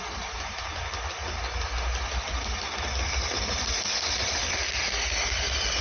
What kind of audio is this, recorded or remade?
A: recorded